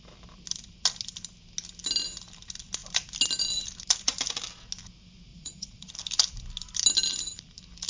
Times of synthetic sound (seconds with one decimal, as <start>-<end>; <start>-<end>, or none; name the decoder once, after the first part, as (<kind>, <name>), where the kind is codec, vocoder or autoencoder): 5.3-5.9 (vocoder, Vocos)